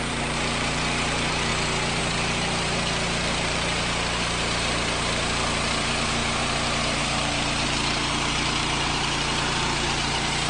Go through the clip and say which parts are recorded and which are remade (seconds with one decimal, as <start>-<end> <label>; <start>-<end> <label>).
0.0-1.5 remade; 1.5-2.0 recorded; 2.0-10.5 remade